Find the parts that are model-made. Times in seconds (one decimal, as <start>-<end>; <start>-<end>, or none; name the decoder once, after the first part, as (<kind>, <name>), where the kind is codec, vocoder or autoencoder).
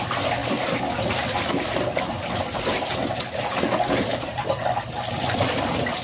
0.4-1.5 (vocoder, BigVGAN v2); 4.1-6.0